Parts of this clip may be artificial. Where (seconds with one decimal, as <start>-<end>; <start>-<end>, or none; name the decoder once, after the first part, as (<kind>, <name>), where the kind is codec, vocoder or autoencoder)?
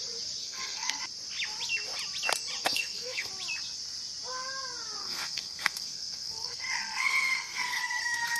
0.4-1.0 (codec, SNAC); 2.6-3.3; 5.0-8.4